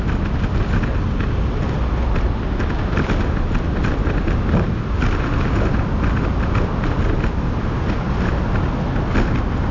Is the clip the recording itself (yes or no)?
yes